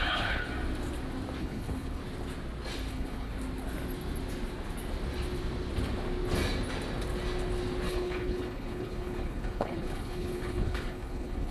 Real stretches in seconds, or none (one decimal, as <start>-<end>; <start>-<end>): 0.5-1.4; 2.0-2.9; 3.3-7.9